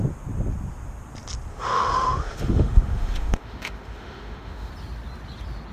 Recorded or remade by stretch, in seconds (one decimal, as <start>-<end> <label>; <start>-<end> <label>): 0.0-1.5 recorded; 1.5-4.7 remade; 4.7-5.7 recorded